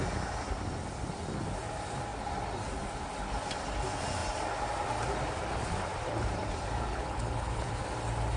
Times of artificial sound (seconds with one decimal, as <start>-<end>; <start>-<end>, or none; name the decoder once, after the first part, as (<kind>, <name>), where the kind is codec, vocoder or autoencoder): 6.9-7.8 (codec, HILCodec)